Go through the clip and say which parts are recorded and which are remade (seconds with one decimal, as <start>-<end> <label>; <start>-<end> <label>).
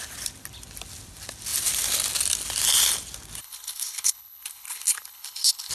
0.0-3.4 recorded; 3.4-5.7 remade